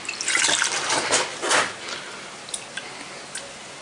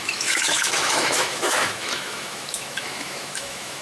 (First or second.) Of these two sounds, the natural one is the first